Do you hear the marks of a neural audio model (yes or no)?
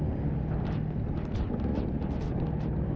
no